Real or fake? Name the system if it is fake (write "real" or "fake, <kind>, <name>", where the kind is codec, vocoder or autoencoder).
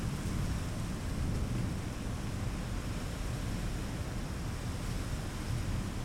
real